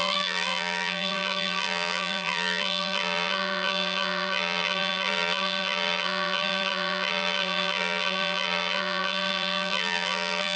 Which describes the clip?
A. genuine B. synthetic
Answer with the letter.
B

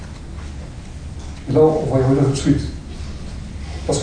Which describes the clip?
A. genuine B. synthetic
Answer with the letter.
A